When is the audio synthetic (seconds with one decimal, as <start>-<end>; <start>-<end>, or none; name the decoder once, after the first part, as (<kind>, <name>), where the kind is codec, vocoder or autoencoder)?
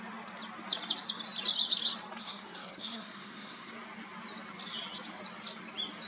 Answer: 2.2-3.7 (codec, SNAC)